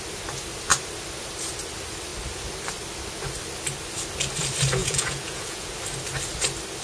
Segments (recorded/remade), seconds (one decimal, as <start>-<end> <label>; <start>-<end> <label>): 0.0-4.8 recorded; 4.8-5.7 remade; 5.7-6.8 recorded